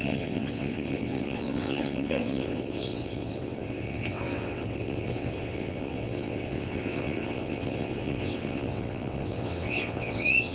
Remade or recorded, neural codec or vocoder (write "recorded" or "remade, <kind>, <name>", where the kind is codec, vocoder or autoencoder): remade, vocoder, WaveNeXt